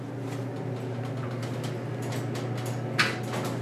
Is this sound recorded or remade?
recorded